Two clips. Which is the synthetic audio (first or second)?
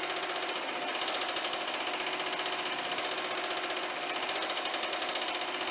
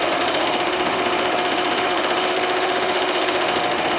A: second